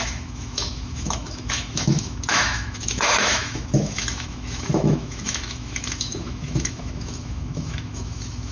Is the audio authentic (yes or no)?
no